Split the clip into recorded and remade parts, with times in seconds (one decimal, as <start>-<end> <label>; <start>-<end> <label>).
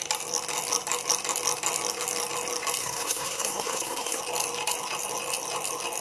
0.0-2.8 recorded; 2.8-4.2 remade; 4.2-6.0 recorded